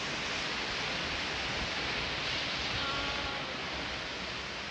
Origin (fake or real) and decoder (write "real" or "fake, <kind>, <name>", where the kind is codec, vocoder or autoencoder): real